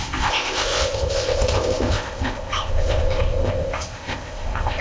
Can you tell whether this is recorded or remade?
remade